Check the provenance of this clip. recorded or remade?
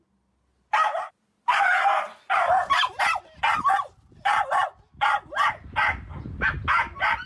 recorded